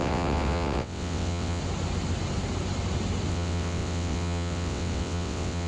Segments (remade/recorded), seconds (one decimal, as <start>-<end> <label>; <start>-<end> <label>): 0.0-1.6 remade; 1.6-3.3 recorded; 3.3-5.7 remade

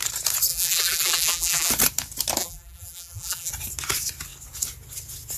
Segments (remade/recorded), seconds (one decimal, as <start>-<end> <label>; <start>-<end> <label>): 0.0-0.5 recorded; 0.5-1.7 remade; 1.7-2.4 recorded; 2.4-3.5 remade; 3.5-5.4 recorded

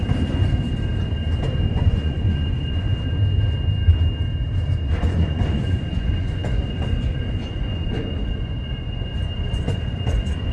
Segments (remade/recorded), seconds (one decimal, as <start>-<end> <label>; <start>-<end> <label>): 0.0-1.7 recorded; 1.7-2.9 remade; 2.9-5.0 recorded; 5.0-10.5 remade